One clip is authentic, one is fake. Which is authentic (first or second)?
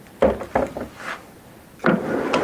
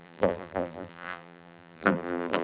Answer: first